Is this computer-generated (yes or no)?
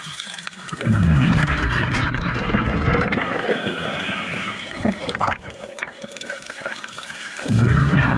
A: yes